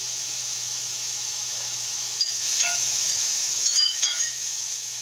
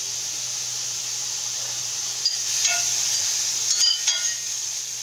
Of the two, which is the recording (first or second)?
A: second